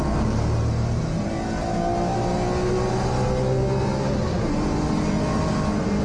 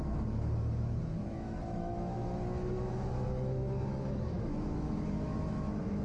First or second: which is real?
first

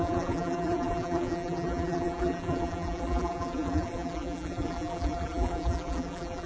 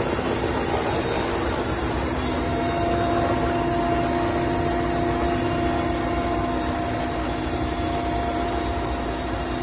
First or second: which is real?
second